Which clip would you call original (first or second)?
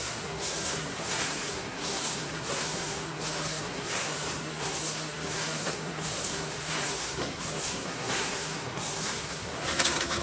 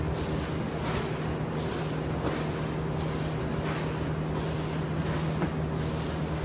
second